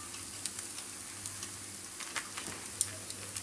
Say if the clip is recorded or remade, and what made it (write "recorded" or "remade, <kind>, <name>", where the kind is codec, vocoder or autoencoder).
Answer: recorded